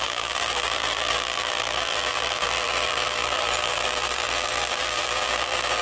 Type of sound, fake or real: fake